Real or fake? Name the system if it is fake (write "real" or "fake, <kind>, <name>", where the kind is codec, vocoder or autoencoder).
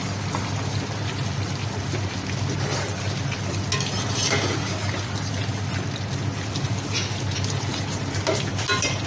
real